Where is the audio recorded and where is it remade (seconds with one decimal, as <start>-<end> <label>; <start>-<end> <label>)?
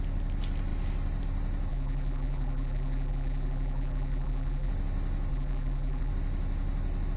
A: 0.0-1.7 recorded; 1.7-4.7 remade; 4.7-5.3 recorded; 5.3-6.1 remade; 6.1-7.2 recorded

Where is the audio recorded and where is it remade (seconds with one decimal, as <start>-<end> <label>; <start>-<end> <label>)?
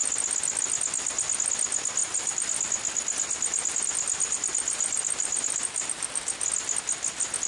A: 0.0-2.0 recorded; 2.0-6.5 remade; 6.5-7.5 recorded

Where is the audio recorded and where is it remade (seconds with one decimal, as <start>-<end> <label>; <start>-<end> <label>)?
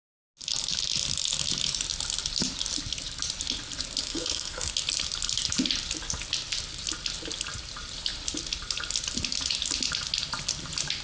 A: 0.0-4.0 recorded; 4.0-4.7 remade; 4.7-11.0 recorded